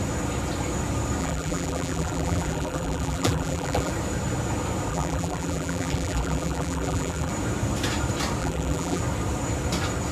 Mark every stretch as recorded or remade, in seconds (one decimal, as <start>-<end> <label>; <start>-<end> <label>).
0.0-1.2 recorded; 1.2-3.9 remade; 3.9-4.9 recorded; 4.9-7.3 remade; 7.3-8.4 recorded; 8.4-9.0 remade; 9.0-10.1 recorded